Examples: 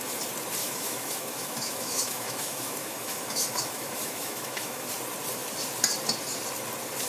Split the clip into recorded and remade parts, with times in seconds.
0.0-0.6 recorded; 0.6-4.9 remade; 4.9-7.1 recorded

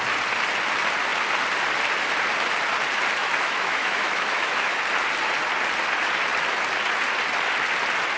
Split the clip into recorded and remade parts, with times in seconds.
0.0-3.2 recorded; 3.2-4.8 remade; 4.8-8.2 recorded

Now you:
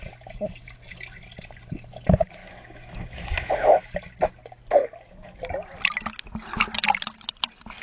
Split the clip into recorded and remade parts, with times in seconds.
0.0-2.4 recorded; 2.4-3.9 remade; 3.9-4.8 recorded; 4.8-5.4 remade; 5.4-7.8 recorded

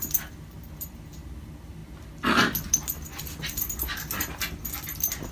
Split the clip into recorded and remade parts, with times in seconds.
0.0-5.3 recorded